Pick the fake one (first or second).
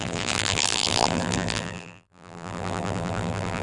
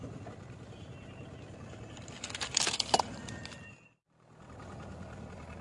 first